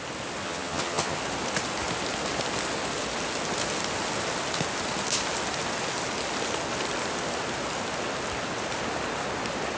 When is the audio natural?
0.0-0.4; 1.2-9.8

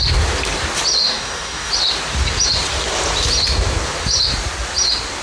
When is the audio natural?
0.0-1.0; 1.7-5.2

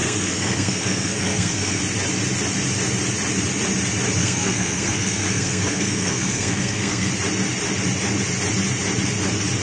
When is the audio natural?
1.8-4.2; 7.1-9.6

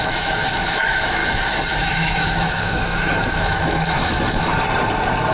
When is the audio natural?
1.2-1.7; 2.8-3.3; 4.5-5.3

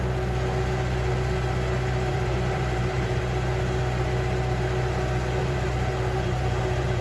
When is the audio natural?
0.0-2.1; 3.2-5.4

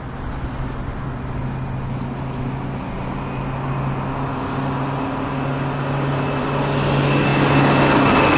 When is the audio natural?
0.0-8.4